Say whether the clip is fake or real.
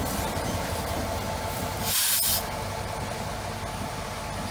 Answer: real